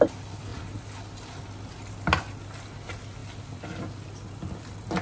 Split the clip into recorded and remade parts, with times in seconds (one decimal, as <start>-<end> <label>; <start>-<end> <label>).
0.0-5.0 recorded